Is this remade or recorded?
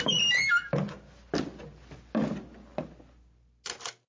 recorded